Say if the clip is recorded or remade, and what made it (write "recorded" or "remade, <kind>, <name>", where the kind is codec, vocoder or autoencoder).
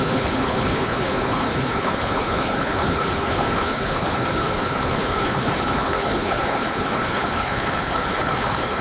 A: remade, codec, HILCodec